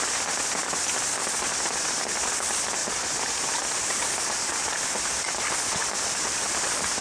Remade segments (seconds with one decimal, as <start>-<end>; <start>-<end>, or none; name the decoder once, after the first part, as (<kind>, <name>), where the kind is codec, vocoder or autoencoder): none